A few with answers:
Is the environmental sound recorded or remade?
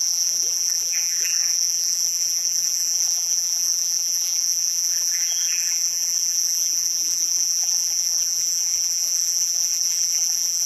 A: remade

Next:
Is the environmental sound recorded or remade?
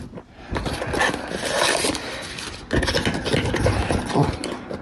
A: recorded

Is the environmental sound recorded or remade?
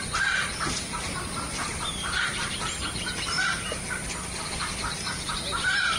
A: remade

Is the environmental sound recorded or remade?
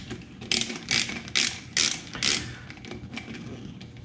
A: recorded